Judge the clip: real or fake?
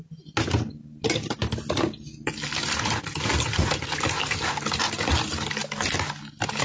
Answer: real